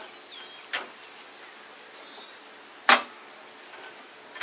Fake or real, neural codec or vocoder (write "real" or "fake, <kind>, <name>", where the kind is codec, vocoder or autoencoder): real